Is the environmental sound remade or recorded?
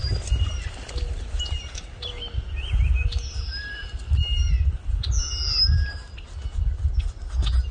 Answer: recorded